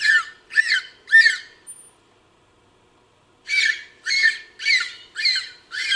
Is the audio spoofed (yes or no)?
no